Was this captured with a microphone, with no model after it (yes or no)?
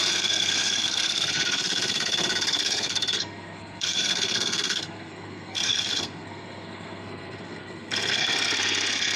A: no